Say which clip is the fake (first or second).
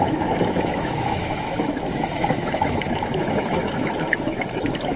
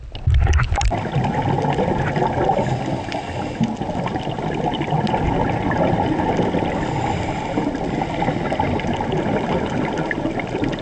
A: first